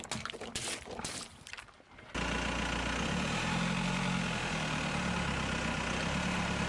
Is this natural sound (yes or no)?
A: yes